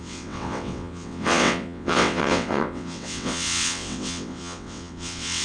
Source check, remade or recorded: remade